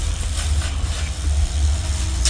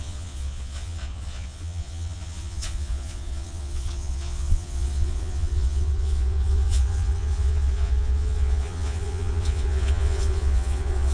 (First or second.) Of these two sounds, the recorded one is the first